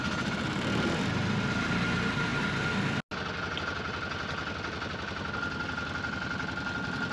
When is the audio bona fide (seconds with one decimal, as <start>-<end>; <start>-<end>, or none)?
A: 0.0-7.1